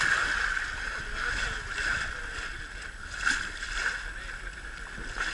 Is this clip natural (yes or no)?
yes